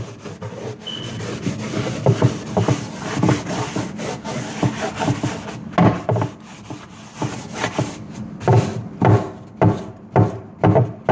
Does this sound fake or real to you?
real